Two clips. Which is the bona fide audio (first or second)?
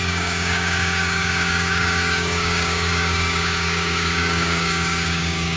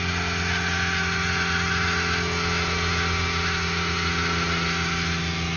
second